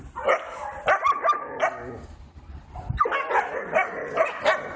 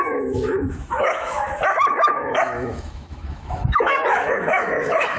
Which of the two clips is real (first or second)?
first